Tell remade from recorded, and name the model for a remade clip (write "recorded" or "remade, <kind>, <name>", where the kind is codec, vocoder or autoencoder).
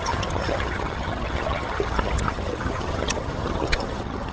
remade, vocoder, HiFi-GAN